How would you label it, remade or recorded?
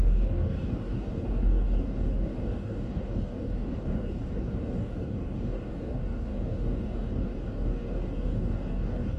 remade